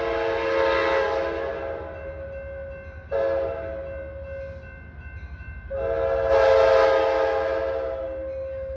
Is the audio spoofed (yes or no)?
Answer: no